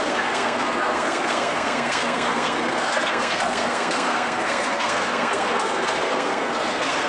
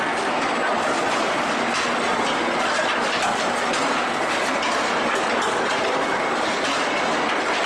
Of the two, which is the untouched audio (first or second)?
second